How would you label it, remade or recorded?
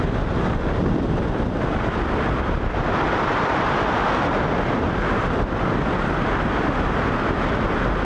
recorded